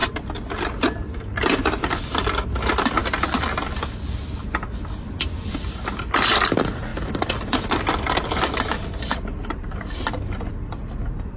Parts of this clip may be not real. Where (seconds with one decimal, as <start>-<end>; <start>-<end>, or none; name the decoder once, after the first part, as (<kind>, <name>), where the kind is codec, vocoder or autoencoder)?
0.8-3.0 (vocoder, BigVGAN v2); 4.8-11.4